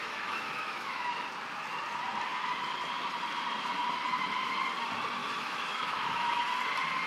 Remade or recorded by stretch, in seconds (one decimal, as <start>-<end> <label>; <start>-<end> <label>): 0.0-1.3 remade; 1.3-5.2 recorded; 5.2-6.4 remade; 6.4-7.1 recorded